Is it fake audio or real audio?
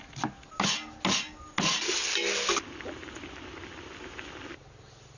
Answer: real